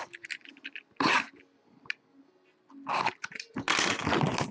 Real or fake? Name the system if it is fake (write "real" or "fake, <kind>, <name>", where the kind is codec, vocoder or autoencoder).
real